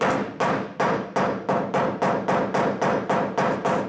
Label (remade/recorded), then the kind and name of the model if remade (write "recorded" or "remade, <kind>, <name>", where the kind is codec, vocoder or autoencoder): recorded